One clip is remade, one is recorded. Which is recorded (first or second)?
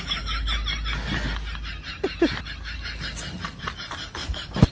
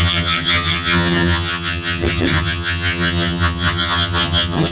first